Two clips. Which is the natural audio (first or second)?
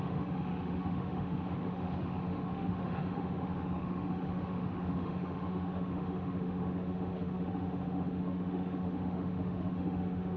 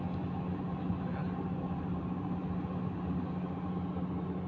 second